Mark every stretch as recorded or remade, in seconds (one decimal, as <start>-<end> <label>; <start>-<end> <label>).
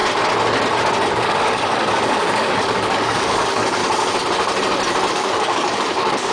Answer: 0.0-1.1 recorded; 1.1-3.8 remade; 3.8-5.1 recorded; 5.1-6.3 remade